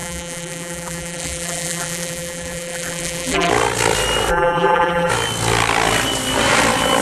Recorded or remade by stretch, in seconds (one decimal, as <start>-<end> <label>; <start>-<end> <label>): 0.0-3.5 remade; 3.5-4.3 recorded; 4.3-5.1 remade; 5.1-7.0 recorded